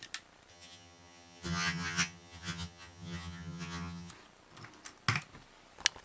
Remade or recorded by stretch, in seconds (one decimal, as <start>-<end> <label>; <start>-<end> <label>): 0.0-0.5 recorded; 0.5-4.1 remade; 4.1-6.0 recorded